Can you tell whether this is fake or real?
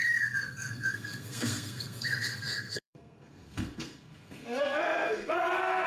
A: fake